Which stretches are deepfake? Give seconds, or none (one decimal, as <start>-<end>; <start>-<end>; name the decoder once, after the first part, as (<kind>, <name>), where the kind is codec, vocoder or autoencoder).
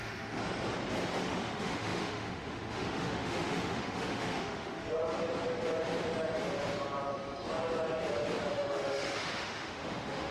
0.0-0.4 (autoencoder, DAC-VAE); 1.2-5.0; 8.5-10.3